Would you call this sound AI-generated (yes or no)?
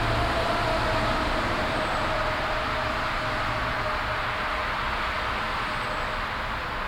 no